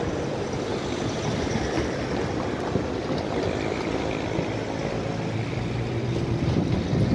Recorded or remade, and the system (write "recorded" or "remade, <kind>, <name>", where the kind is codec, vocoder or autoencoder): recorded